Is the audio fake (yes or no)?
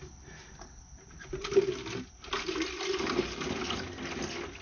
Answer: no